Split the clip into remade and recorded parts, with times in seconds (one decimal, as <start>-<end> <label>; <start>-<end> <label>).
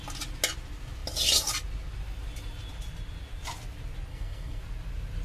0.0-4.1 recorded; 4.1-4.6 remade; 4.6-5.2 recorded